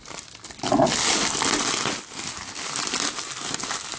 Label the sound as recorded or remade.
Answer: recorded